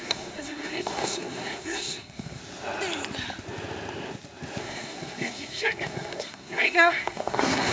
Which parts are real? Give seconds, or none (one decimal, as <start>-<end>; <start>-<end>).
2.4-4.6